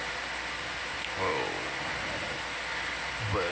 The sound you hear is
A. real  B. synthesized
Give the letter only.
A